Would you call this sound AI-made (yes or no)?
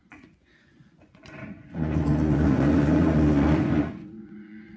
yes